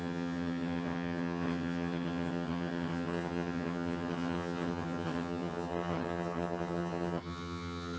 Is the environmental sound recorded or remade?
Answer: remade